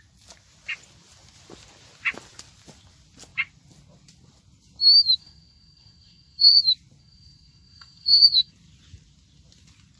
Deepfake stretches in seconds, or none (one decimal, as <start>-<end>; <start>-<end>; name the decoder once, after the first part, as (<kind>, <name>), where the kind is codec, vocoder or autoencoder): 5.2-6.6 (codec, SNAC); 7.0-8.5